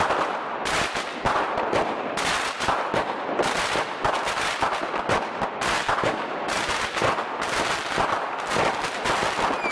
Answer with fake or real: real